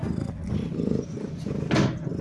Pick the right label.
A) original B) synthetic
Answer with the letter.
A